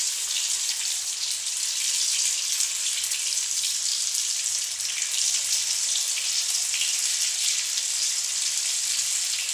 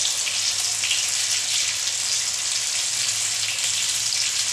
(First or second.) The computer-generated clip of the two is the first